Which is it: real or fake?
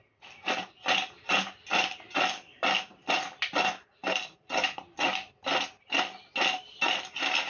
real